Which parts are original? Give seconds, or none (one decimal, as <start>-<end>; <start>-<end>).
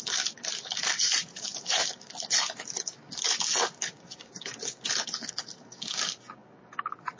none